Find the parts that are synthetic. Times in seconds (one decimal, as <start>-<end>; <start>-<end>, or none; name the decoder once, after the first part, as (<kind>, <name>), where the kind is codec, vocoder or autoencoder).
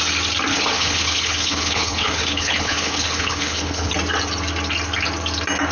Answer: 0.5-3.9 (codec, HILCodec)